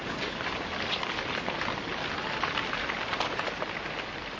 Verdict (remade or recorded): recorded